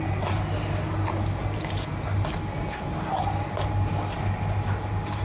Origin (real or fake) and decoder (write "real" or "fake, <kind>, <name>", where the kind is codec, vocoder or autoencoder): real